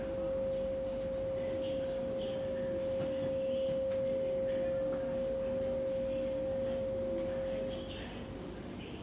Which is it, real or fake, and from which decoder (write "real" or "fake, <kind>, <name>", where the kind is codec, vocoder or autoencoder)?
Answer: real